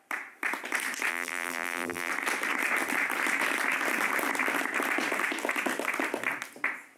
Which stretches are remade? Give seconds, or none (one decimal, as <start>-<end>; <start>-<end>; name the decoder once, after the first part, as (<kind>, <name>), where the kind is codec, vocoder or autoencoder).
1.1-2.1 (vocoder, BigVGAN v2)

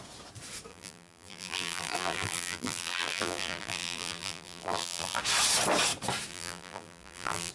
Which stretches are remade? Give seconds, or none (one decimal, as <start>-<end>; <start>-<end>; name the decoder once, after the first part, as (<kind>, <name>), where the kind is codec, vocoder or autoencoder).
0.7-5.2 (vocoder, BigVGAN v2); 6.3-7.5

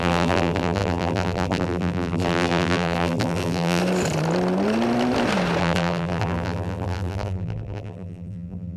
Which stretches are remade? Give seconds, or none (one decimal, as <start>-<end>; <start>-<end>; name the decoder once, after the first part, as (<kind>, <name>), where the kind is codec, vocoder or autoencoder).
0.0-3.8 (vocoder, BigVGAN v2); 5.6-8.8

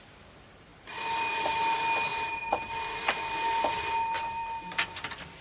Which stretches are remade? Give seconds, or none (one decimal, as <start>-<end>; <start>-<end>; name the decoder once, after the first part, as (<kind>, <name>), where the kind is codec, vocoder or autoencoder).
none

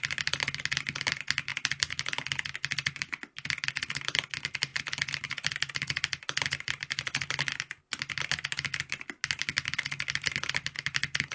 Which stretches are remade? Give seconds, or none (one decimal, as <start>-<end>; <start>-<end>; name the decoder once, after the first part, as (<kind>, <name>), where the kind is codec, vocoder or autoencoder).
none

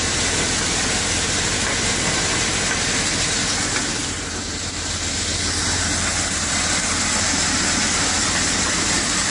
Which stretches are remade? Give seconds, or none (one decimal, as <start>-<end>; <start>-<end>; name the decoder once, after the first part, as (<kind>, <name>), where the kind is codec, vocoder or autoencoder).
4.0-6.5 (vocoder, BigVGAN v2)

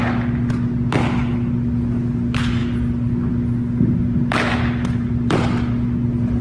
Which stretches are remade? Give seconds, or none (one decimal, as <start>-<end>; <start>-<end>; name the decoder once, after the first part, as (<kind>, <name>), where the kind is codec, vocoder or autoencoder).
none